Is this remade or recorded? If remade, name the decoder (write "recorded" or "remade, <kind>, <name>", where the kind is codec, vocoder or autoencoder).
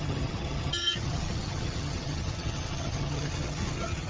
remade, vocoder, HiFi-GAN